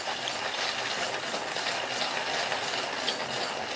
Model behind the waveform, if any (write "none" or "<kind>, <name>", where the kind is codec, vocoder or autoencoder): none